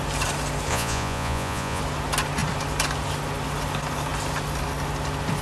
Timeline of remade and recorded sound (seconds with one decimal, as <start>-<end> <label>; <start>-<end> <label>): 0.0-0.7 recorded; 0.7-1.8 remade; 1.8-5.4 recorded